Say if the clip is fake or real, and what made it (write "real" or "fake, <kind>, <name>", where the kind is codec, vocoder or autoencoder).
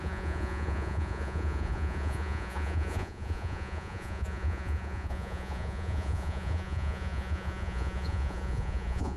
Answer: fake, vocoder, Vocos